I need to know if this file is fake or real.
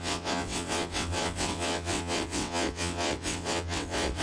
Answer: fake